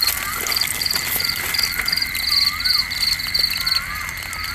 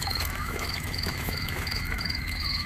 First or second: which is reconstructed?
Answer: second